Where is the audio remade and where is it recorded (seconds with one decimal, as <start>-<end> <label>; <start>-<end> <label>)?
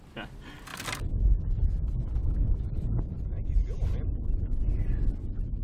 0.0-2.2 recorded; 2.2-3.0 remade; 3.0-5.6 recorded